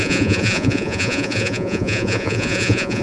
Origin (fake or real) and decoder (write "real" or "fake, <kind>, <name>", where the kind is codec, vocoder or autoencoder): fake, vocoder, Vocos